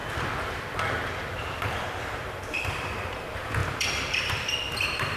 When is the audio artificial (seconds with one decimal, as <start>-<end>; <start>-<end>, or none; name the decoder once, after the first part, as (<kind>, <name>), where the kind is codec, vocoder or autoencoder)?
0.0-3.1 (vocoder, BigVGAN v2); 3.6-4.6